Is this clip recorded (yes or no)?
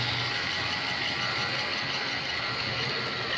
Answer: yes